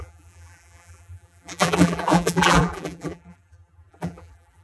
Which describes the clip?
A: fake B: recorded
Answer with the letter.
A